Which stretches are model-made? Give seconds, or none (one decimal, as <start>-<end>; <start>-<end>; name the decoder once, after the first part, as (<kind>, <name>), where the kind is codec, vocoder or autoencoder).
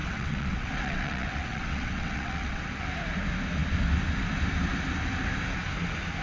0.0-2.6 (vocoder, WaveNeXt)